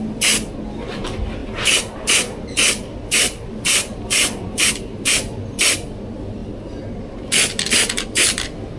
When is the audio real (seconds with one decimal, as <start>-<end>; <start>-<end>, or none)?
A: 0.0-1.4; 4.7-8.8